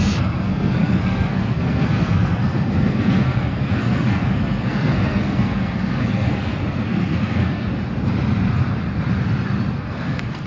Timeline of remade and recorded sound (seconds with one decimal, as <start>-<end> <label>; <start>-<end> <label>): 0.0-7.7 remade; 7.7-9.8 recorded; 9.8-10.5 remade